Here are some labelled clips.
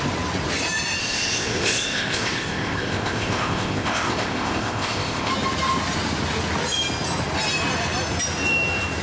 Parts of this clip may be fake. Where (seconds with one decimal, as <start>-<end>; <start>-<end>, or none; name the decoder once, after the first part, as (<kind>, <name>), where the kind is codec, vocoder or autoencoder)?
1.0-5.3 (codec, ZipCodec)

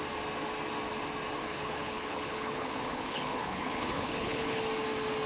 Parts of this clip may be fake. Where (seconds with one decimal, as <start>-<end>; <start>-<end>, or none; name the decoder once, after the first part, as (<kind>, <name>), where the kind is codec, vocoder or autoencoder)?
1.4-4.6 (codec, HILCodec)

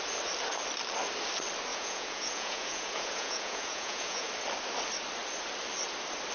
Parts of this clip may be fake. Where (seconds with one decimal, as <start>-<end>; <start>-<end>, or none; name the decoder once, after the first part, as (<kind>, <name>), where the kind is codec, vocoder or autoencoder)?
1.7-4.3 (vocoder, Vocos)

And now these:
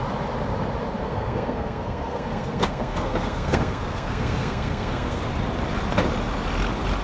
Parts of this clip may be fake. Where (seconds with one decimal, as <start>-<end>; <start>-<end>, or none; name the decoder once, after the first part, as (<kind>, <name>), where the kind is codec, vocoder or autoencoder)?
1.0-5.2 (codec, SNAC)

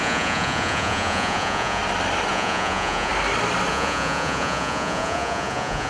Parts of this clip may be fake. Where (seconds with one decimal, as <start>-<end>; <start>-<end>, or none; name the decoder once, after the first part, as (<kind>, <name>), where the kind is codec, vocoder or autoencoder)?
0.0-1.8 (vocoder, Vocos); 2.3-3.1; 3.7-5.9

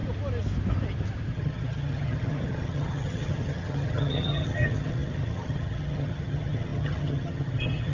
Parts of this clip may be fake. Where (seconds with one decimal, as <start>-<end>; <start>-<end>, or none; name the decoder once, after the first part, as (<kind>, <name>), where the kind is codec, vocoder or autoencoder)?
1.3-7.9 (vocoder, HiFi-GAN)